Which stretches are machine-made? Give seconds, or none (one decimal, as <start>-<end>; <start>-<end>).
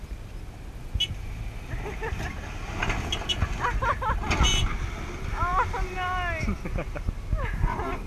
none